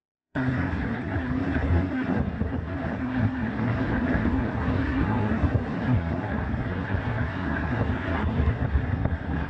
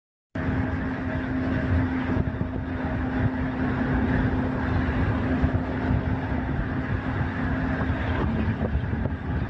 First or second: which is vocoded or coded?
first